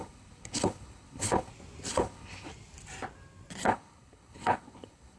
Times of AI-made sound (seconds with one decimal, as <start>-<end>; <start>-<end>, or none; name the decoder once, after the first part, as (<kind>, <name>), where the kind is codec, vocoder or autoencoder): 0.0-1.5 (codec, HILCodec); 1.9-2.5; 3.6-5.2